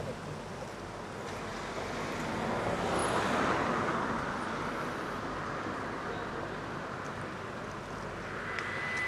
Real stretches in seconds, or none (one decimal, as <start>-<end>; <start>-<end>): 0.0-3.0; 7.8-9.1